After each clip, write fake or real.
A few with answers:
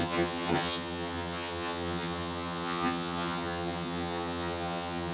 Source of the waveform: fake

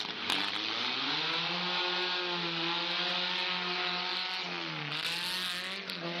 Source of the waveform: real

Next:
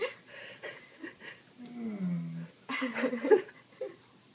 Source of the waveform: real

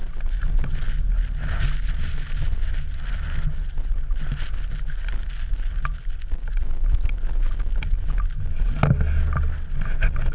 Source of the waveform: real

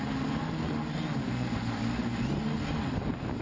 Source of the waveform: real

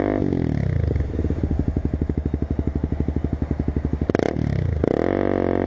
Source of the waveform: real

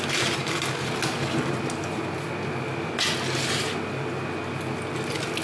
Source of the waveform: real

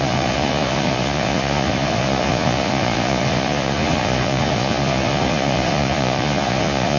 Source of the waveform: fake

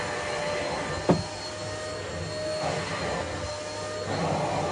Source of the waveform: real